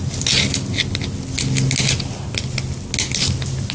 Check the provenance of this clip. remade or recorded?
recorded